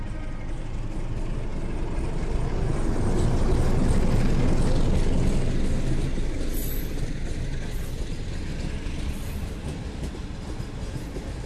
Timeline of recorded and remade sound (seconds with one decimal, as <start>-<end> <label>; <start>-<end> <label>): 0.0-11.5 recorded